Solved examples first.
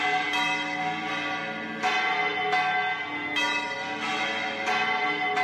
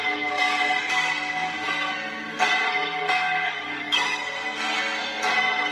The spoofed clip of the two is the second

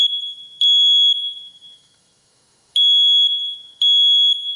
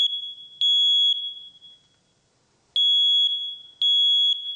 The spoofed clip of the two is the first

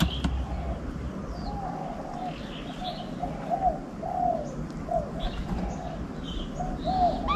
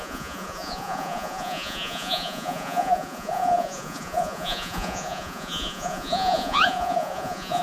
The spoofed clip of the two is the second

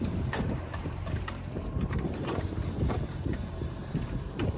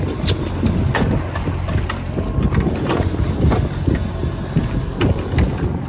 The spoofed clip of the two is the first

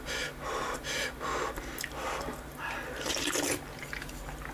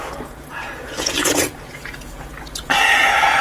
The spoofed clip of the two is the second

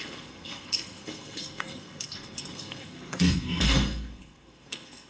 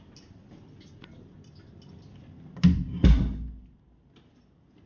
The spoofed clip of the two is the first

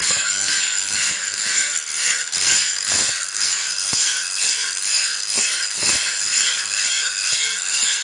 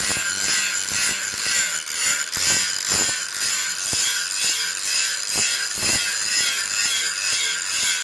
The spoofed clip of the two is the first